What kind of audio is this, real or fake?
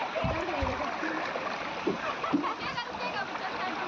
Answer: real